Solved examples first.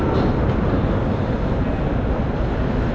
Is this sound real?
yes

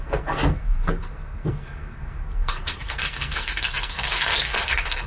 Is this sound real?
no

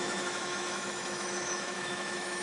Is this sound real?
no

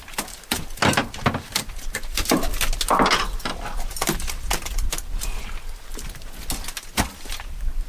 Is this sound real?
yes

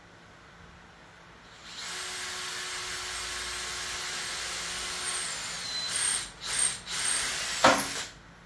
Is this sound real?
yes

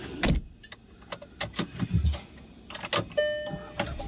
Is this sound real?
yes